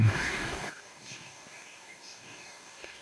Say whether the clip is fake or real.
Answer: fake